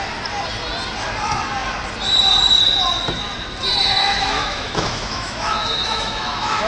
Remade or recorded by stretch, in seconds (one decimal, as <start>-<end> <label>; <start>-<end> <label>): 0.0-4.0 recorded; 4.0-6.7 remade